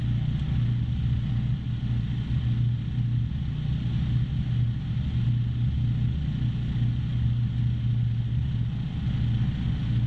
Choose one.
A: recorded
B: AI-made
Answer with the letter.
A